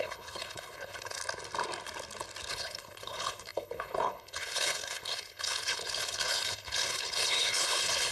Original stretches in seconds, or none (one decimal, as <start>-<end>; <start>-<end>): 1.2-2.5